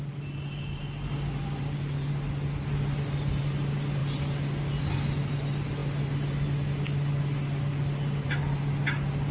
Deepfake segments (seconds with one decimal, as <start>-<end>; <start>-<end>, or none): none